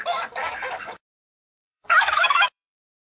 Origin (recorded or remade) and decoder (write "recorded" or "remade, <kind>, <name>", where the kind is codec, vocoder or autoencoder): remade, codec, DAC